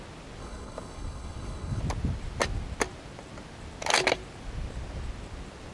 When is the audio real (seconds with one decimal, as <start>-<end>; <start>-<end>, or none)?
0.0-0.4; 1.8-5.7